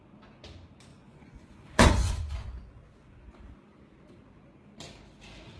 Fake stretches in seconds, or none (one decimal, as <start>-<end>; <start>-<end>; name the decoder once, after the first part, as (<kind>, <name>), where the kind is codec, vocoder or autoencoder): 0.9-2.6 (vocoder, Vocos)